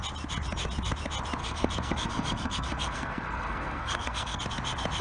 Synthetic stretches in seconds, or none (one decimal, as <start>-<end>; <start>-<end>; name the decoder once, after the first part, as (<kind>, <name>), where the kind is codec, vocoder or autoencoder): 1.4-4.4 (codec, SNAC)

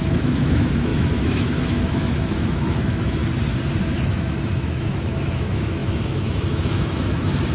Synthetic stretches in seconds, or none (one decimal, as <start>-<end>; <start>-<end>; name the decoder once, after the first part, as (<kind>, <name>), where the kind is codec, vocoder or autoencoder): 0.0-3.2 (autoencoder, DAC-VAE); 3.8-7.5

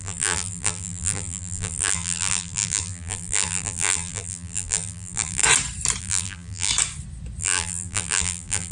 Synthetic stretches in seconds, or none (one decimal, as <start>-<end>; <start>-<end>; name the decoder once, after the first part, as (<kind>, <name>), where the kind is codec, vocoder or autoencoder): 0.0-5.4 (vocoder, BigVGAN v2); 6.0-6.7; 7.4-8.7

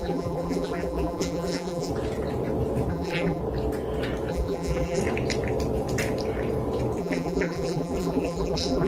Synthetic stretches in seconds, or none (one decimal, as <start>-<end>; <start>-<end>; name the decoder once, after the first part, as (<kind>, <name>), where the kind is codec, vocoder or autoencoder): 0.0-1.9 (vocoder, BigVGAN v2); 2.9-3.4; 4.3-5.0; 7.0-8.9

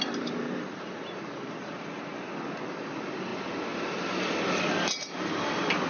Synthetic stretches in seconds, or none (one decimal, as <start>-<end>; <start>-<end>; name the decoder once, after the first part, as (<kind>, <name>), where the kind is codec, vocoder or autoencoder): none

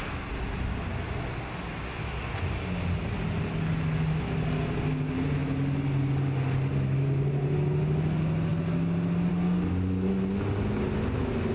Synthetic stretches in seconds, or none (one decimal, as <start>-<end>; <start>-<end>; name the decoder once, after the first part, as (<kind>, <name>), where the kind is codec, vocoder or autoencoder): none

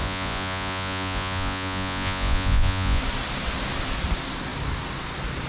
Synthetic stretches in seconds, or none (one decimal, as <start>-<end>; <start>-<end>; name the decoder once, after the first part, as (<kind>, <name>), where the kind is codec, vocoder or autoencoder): 0.0-3.0 (vocoder, Vocos)

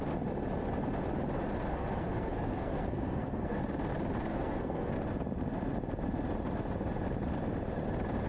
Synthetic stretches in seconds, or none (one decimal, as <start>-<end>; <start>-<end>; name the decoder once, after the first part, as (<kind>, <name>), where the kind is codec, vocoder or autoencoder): 1.7-3.6 (codec, SNAC); 4.3-4.9